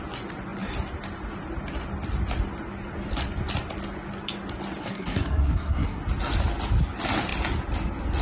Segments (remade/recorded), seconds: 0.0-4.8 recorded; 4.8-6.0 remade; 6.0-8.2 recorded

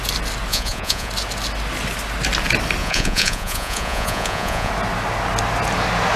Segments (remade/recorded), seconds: 0.0-0.5 recorded; 0.5-1.1 remade; 1.1-2.8 recorded; 2.8-4.7 remade; 4.7-6.2 recorded

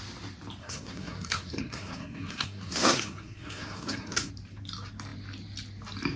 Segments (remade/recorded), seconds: 0.0-0.6 recorded; 0.6-4.3 remade; 4.3-6.2 recorded